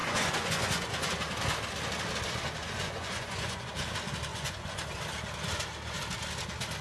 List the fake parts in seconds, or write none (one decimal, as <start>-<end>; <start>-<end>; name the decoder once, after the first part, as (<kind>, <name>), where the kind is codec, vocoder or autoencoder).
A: 0.0-1.1 (vocoder, Vocos); 2.6-3.7; 4.3-4.8